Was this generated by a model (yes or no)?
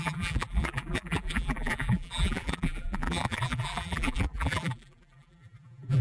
yes